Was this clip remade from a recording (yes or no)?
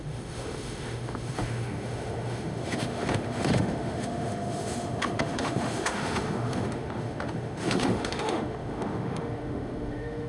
yes